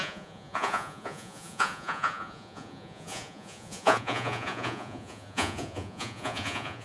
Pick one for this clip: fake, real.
fake